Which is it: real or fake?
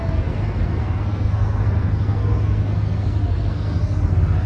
fake